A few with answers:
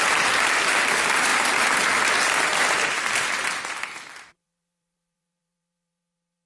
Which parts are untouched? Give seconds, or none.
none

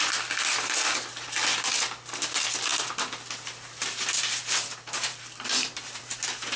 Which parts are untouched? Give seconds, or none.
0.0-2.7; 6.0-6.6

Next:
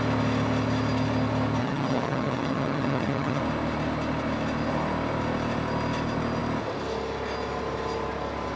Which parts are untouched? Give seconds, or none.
0.0-1.6; 3.4-8.6

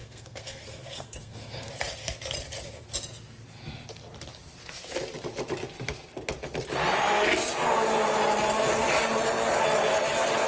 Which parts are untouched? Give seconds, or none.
1.7-10.5